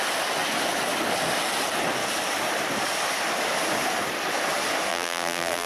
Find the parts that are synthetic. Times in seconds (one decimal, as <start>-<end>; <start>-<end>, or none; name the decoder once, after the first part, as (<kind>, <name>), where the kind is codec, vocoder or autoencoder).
4.9-5.7 (vocoder, BigVGAN v2)